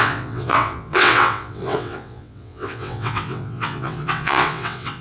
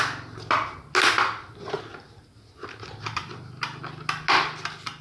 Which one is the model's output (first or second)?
first